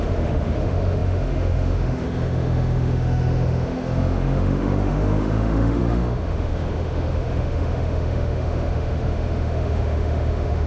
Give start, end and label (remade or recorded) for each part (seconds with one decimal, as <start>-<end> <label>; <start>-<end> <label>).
0.0-10.7 remade